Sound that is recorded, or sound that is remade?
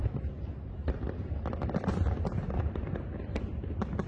recorded